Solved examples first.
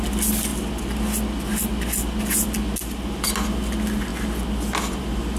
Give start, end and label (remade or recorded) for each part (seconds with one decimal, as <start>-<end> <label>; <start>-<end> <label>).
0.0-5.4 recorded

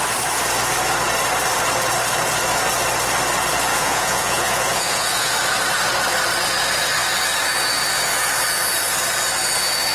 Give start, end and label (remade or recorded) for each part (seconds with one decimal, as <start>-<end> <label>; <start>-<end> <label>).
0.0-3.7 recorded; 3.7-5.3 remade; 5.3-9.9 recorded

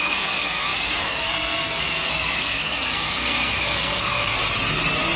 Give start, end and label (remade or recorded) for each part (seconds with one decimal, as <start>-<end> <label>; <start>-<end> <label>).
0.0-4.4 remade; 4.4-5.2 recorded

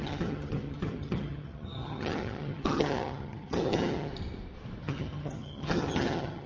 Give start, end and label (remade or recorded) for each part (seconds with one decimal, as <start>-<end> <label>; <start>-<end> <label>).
0.0-4.1 remade; 4.1-4.8 recorded; 4.8-6.5 remade

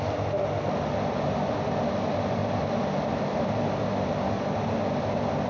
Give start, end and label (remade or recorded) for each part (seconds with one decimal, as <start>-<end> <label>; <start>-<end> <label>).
0.0-5.5 recorded

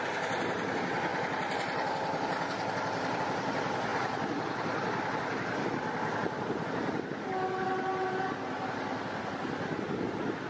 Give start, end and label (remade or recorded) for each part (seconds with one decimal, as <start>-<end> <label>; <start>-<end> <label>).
0.0-10.5 recorded

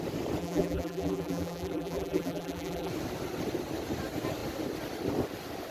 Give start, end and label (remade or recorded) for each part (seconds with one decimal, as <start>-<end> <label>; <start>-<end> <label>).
0.0-0.4 recorded; 0.4-2.9 remade; 2.9-5.7 recorded